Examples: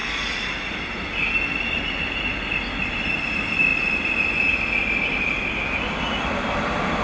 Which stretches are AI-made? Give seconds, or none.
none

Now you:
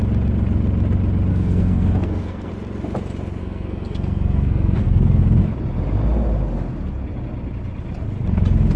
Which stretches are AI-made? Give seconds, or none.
1.3-2.5 (codec, SNAC); 3.4-5.2

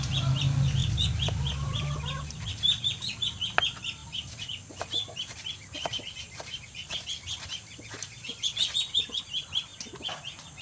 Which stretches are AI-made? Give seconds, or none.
none

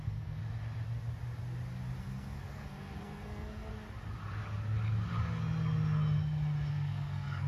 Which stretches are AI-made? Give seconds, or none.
0.0-0.4 (codec, SNAC); 2.0-3.7; 6.7-7.5